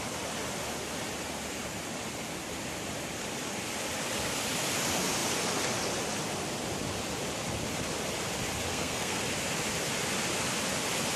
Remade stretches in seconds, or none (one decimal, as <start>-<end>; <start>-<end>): 8.7-9.2